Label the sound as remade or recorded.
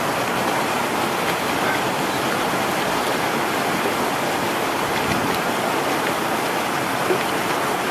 recorded